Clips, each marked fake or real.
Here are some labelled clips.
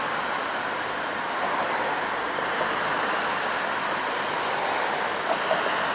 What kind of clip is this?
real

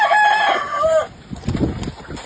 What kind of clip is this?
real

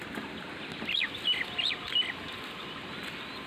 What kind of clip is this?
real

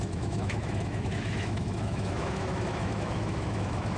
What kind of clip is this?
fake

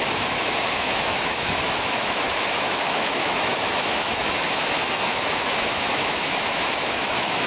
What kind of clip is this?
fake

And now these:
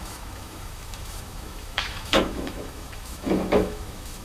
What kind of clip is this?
fake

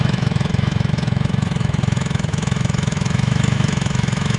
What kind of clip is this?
fake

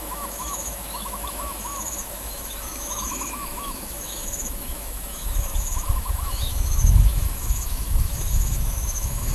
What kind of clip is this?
fake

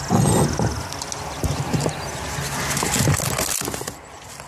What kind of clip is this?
real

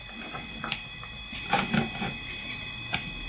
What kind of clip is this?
real